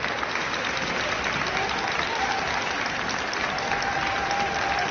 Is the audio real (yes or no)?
yes